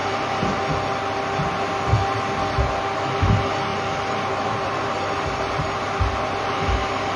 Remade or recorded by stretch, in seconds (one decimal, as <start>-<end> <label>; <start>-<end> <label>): 0.0-0.6 remade; 0.6-3.7 recorded; 3.7-7.2 remade